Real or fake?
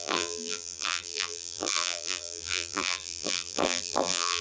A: fake